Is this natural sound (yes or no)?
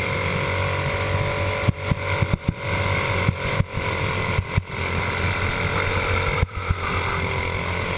yes